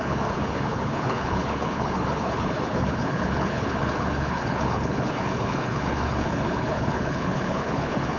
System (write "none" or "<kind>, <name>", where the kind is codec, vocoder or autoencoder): codec, HILCodec